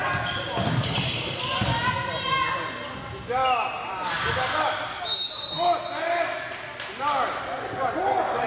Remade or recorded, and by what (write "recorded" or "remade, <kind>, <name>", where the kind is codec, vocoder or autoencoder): recorded